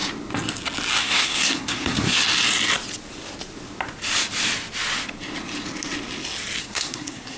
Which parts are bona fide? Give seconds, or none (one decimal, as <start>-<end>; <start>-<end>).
0.0-1.0; 2.2-6.6